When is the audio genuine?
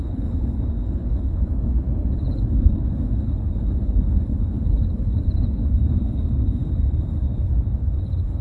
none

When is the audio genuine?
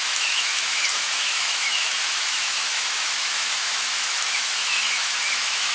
none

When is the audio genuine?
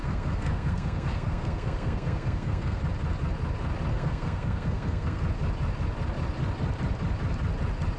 2.8-3.9; 5.2-8.0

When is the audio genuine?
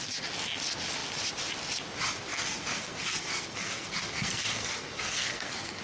0.0-2.3